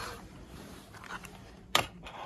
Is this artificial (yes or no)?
yes